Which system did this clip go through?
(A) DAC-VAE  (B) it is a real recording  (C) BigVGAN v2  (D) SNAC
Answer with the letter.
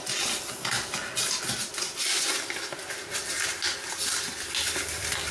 B